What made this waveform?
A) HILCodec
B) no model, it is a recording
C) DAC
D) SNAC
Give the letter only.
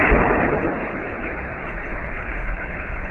A